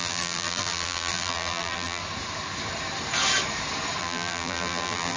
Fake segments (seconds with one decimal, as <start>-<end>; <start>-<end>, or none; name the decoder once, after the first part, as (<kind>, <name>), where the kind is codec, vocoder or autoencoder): 0.0-2.0 (vocoder, BigVGAN v2); 4.0-5.2